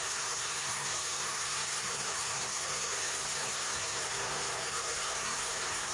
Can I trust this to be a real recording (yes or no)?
no